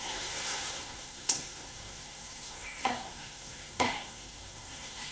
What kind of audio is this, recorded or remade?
remade